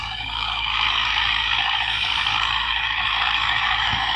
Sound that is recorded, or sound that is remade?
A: remade